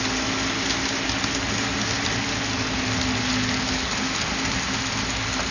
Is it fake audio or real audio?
real